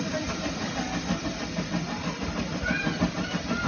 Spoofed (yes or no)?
no